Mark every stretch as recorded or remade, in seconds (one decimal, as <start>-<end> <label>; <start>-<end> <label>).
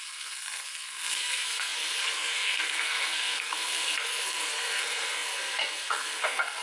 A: 0.0-6.6 remade